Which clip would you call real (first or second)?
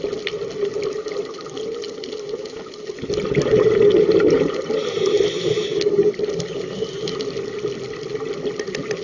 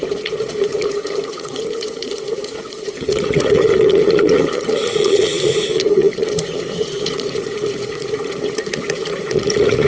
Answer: first